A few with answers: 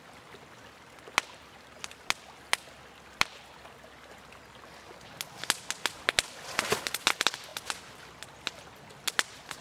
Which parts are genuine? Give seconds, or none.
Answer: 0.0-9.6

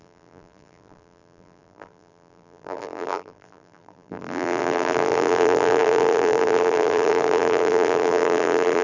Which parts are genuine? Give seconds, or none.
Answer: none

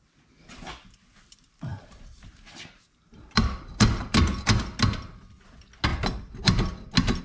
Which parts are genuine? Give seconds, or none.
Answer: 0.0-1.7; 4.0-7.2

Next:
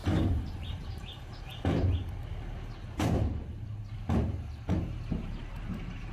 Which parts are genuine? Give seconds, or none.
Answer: 1.5-5.2

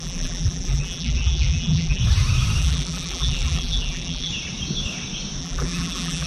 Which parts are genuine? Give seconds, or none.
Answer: 2.0-2.6; 4.3-5.4

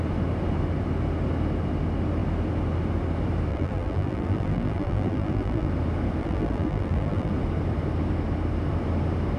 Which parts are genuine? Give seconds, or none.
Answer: 0.0-3.5; 5.7-6.2; 7.3-9.4